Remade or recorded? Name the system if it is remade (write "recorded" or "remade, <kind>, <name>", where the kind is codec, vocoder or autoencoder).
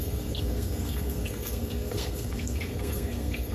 remade, codec, SNAC